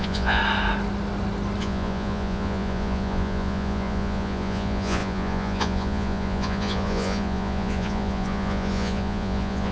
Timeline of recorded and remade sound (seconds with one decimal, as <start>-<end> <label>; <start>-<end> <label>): 0.0-0.4 remade; 0.4-1.6 recorded; 1.6-9.7 remade